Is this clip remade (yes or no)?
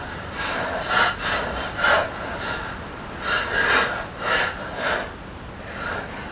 no